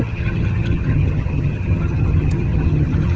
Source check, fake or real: fake